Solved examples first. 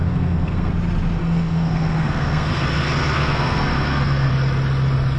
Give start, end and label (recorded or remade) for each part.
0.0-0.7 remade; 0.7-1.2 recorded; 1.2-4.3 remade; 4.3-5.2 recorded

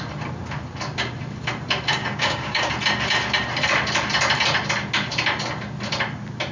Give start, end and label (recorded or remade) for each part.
0.0-2.0 recorded; 2.0-2.7 remade; 2.7-6.5 recorded

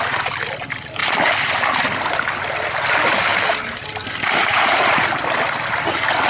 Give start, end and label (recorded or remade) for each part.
0.0-4.4 recorded; 4.4-5.1 remade; 5.1-6.3 recorded

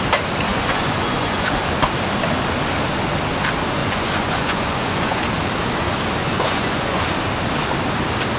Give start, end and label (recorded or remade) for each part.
0.0-0.5 recorded; 0.5-1.6 remade; 1.6-3.8 recorded; 3.8-5.2 remade; 5.2-6.2 recorded; 6.2-7.0 remade; 7.0-8.4 recorded

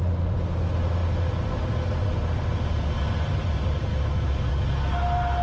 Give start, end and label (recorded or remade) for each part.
0.0-3.9 recorded; 3.9-4.5 remade; 4.5-5.4 recorded

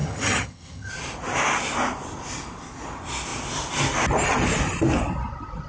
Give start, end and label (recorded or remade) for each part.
0.0-0.9 remade; 0.9-5.7 recorded

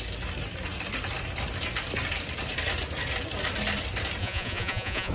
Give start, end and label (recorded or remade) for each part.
0.0-4.2 recorded; 4.2-5.1 remade